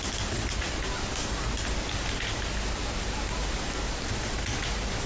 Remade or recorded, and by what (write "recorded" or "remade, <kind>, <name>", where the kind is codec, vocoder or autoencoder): recorded